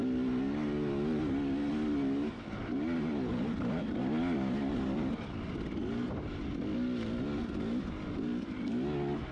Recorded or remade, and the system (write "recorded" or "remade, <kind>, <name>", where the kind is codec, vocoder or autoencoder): recorded